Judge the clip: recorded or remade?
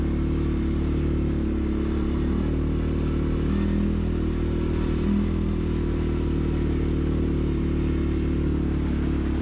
recorded